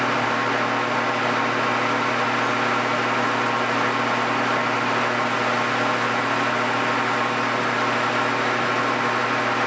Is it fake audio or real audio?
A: real